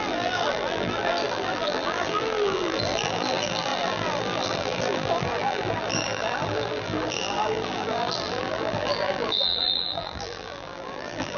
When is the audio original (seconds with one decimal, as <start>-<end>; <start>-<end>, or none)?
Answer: none